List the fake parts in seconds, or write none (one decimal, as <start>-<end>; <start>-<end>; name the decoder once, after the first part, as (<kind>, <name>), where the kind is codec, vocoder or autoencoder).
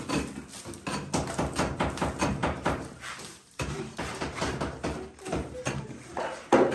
2.4-6.7 (vocoder, BigVGAN v2)